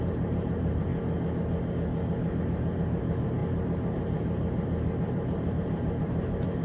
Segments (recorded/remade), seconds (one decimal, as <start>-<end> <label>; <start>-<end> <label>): 0.0-0.9 remade; 0.9-2.4 recorded; 2.4-6.6 remade